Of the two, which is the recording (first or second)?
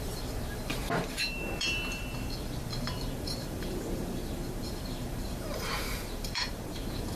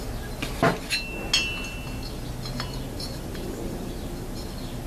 second